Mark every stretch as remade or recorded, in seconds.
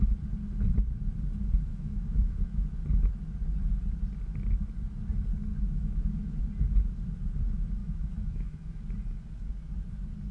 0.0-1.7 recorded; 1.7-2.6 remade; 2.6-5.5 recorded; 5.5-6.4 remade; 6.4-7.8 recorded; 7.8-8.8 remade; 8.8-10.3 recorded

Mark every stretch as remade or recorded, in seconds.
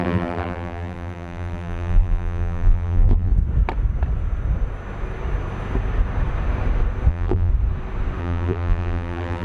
0.0-3.3 remade; 3.3-7.1 recorded; 7.1-7.5 remade; 7.5-8.2 recorded; 8.2-9.4 remade